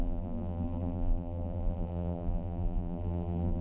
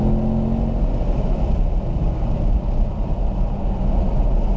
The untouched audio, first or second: second